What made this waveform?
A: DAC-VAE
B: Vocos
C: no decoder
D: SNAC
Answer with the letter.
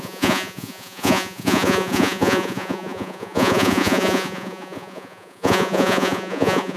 B